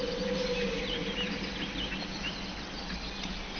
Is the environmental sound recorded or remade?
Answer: recorded